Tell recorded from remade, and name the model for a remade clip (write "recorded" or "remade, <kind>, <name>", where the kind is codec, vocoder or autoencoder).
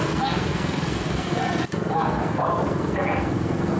remade, codec, SNAC